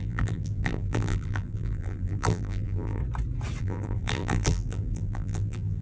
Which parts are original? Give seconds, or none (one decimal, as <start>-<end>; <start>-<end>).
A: 3.0-3.6